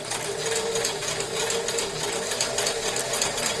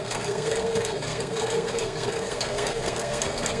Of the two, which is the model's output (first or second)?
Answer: second